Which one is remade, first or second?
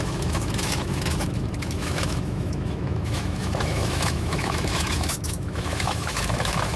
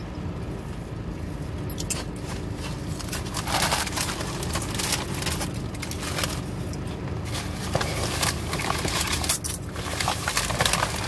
first